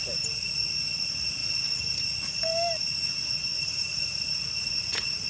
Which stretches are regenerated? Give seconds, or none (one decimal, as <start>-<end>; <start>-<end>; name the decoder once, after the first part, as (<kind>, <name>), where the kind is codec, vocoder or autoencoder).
3.5-5.3 (vocoder, Vocos)